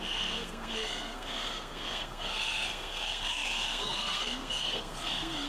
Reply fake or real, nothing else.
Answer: fake